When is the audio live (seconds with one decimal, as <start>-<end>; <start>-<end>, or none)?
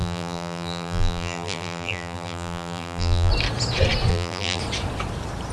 3.3-4.1; 4.6-5.5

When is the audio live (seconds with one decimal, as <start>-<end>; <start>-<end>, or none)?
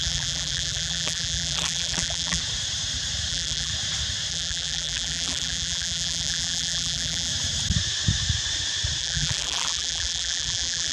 2.4-3.3; 3.7-4.3; 7.3-9.0